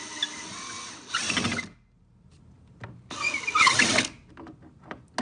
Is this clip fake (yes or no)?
no